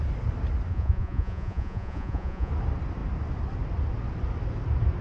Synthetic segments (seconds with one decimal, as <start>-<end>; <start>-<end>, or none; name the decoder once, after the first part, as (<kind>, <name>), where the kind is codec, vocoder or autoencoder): 0.7-2.5 (vocoder, Vocos)